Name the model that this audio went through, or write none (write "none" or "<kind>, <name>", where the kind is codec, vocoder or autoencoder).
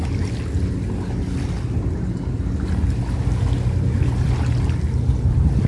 none